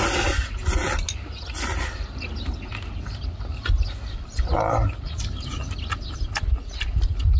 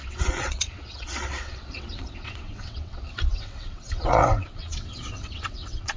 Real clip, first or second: first